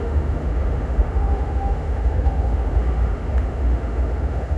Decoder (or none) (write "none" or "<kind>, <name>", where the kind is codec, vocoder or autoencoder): autoencoder, DAC-VAE